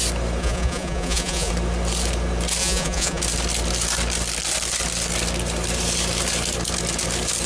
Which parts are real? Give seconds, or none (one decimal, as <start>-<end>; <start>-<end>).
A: 0.0-0.4; 1.5-2.6; 3.2-7.5